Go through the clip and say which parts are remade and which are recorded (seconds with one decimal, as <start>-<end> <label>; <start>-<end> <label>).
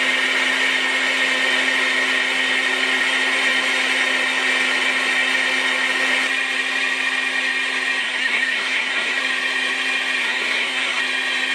0.0-8.0 recorded; 8.0-9.2 remade; 9.2-10.2 recorded; 10.2-11.0 remade; 11.0-11.5 recorded